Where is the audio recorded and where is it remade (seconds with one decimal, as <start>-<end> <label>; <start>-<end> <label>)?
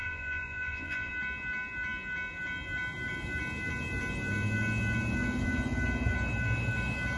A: 0.0-1.1 remade; 1.1-7.2 recorded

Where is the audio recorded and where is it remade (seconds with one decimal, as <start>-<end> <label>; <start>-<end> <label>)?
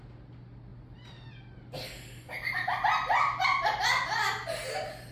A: 0.0-5.1 recorded